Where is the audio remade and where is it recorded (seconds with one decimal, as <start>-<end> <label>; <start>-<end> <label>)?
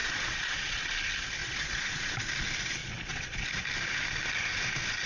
0.0-0.9 remade; 0.9-1.4 recorded; 1.4-2.0 remade; 2.0-2.8 recorded; 2.8-3.4 remade; 3.4-5.1 recorded